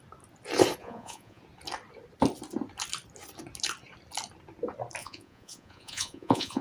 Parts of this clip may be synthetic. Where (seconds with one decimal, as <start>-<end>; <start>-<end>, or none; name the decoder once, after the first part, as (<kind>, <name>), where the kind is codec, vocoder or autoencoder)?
0.8-1.4 (vocoder, Vocos); 5.0-6.6